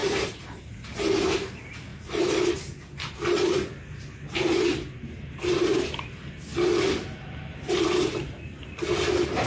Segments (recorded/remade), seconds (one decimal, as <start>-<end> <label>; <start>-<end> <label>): 0.0-1.5 remade; 1.5-9.5 recorded